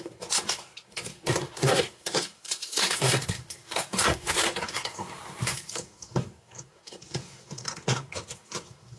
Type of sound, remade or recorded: remade